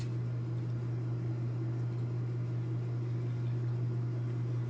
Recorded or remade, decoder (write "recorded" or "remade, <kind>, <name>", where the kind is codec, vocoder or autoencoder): recorded